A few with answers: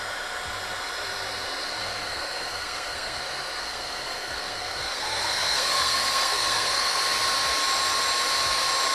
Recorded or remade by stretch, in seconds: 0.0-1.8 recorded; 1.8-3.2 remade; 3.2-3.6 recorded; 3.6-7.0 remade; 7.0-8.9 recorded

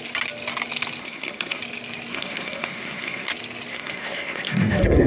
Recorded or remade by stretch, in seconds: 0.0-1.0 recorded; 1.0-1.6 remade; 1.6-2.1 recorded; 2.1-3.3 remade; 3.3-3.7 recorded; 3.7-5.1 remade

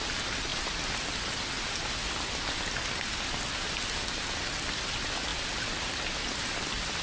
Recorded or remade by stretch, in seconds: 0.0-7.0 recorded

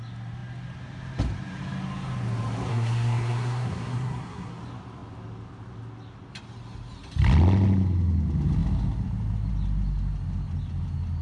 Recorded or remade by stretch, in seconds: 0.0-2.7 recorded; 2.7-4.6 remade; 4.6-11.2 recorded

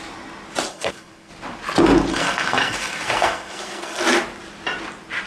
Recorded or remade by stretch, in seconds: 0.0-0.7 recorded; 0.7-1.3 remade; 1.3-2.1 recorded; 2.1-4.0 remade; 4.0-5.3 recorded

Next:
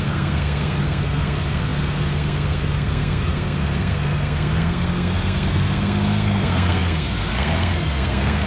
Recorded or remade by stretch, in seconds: 0.0-8.5 remade